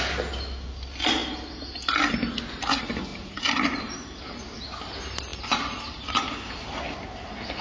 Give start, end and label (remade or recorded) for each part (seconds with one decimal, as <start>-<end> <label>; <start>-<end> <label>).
0.0-3.1 recorded; 3.1-4.6 remade; 4.6-5.3 recorded; 5.3-6.6 remade; 6.6-7.6 recorded